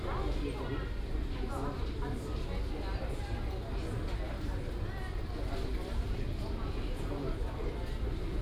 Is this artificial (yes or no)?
no